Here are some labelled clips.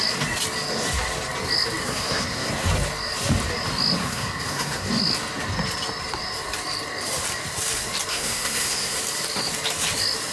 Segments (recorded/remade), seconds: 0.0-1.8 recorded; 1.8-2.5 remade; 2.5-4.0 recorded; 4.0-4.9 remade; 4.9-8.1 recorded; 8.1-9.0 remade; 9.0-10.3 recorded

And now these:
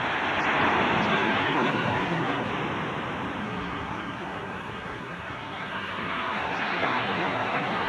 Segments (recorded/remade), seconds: 0.0-1.1 recorded; 1.1-2.5 remade; 2.5-3.4 recorded; 3.4-7.9 remade

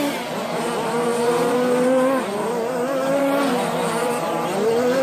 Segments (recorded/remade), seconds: 0.0-5.0 recorded

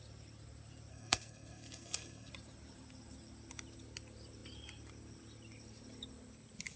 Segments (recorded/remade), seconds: 0.0-0.9 recorded; 0.9-2.3 remade; 2.3-6.8 recorded